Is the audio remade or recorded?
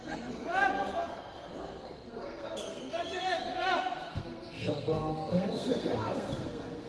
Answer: remade